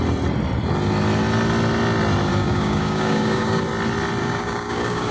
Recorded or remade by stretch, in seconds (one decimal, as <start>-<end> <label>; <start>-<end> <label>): 0.0-2.3 recorded; 2.3-3.6 remade; 3.6-4.2 recorded; 4.2-5.1 remade